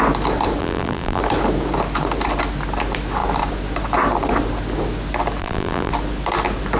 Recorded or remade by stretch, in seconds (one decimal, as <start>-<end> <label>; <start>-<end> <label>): 0.0-0.6 recorded; 0.6-1.2 remade; 1.2-5.4 recorded; 5.4-5.9 remade; 5.9-6.8 recorded